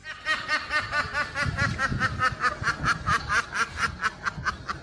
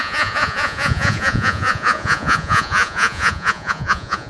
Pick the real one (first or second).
first